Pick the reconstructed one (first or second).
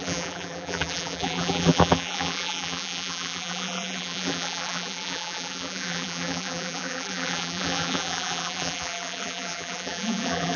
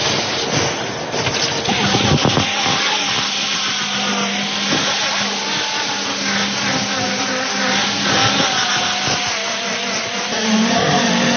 first